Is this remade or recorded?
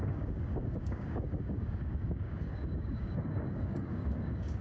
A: remade